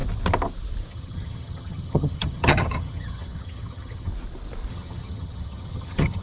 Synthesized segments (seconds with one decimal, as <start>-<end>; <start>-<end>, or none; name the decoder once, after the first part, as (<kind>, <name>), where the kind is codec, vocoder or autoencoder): 0.9-4.1 (vocoder, HiFi-GAN); 4.7-6.2